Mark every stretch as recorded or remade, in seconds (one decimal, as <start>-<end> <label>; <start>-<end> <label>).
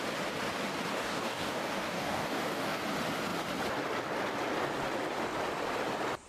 0.0-0.9 recorded; 0.9-2.8 remade; 2.8-6.3 recorded